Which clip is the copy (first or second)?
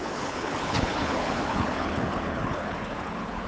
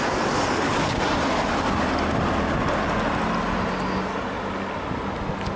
first